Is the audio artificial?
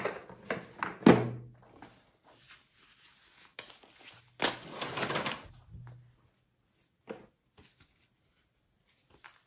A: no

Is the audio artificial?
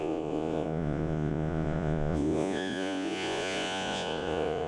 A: yes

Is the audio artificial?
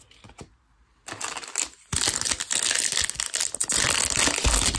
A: no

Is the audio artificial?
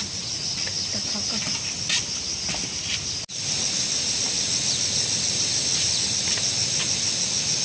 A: no